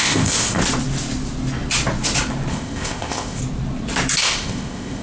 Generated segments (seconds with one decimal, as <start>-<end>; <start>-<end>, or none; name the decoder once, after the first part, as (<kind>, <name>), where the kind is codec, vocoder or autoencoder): 0.0-0.6 (codec, ZipCodec); 2.5-3.4; 4.2-5.0